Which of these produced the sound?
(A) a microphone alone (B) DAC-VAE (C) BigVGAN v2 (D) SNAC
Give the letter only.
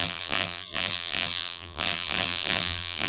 C